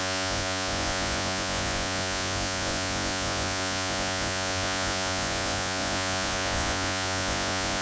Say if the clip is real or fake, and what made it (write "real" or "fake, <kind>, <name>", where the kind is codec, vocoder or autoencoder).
fake, vocoder, Vocos